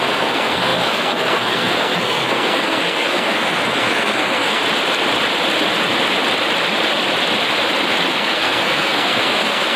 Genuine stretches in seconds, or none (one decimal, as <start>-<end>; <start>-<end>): 4.6-8.1